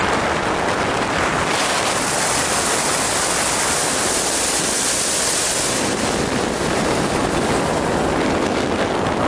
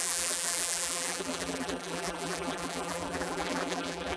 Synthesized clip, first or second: second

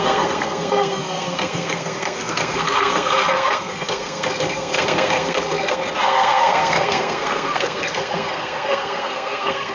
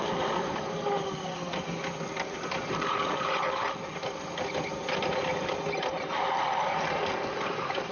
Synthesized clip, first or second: first